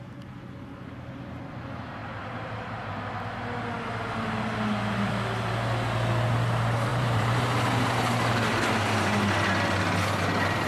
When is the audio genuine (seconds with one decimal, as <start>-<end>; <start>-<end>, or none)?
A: 0.0-2.0; 2.9-6.9; 8.9-10.7